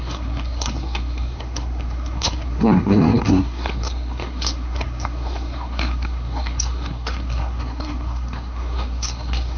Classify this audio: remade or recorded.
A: remade